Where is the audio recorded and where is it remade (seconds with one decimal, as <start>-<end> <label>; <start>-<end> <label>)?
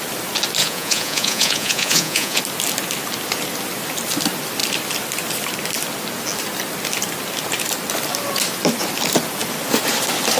0.0-0.6 recorded; 0.6-2.4 remade; 2.4-10.4 recorded